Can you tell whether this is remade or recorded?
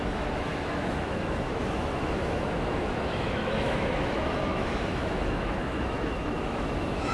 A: remade